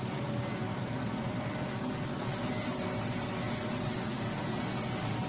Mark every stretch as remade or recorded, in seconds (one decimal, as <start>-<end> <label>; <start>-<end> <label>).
0.0-5.3 recorded